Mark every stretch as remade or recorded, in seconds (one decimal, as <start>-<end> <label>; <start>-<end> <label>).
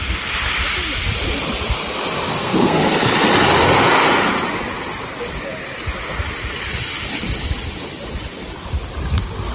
0.0-2.4 recorded; 2.4-2.9 remade; 2.9-9.5 recorded